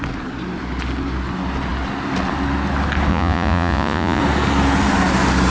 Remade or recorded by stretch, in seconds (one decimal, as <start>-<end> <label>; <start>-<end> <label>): 0.0-3.1 recorded; 3.1-4.2 remade; 4.2-5.5 recorded